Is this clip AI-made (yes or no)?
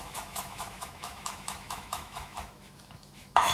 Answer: yes